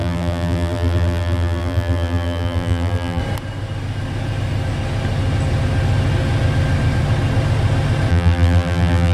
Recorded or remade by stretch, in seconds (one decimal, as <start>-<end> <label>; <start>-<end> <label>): 0.0-3.2 remade; 3.2-8.1 recorded; 8.1-9.1 remade